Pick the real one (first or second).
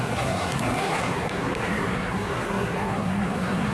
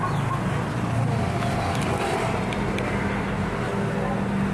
second